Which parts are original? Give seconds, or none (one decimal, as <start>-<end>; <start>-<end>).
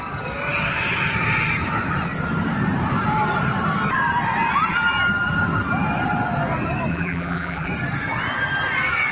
0.0-6.9; 7.7-9.1